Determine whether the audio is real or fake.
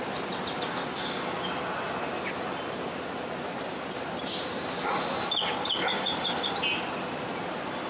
real